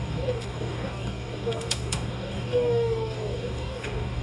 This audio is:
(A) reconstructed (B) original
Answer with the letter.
A